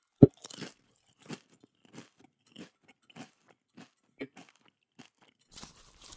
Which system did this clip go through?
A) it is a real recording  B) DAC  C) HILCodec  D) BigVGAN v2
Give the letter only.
A